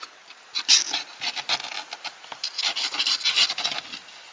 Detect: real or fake real